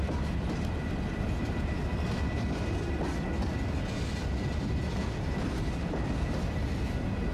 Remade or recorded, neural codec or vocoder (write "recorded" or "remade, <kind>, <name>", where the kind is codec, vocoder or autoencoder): recorded